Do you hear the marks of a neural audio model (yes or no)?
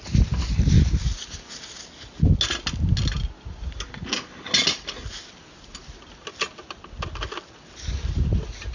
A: no